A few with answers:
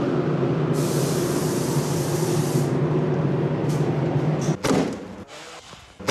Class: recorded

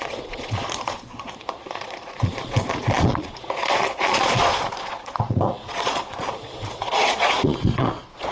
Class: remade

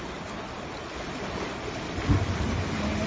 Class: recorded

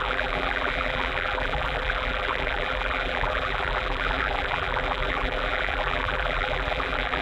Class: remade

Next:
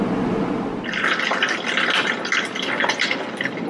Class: recorded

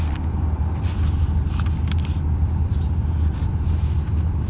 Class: recorded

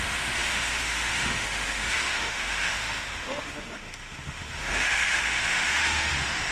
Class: remade